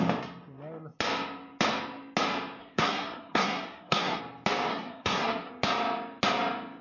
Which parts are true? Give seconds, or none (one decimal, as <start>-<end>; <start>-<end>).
0.0-2.6; 4.2-4.7; 5.5-6.8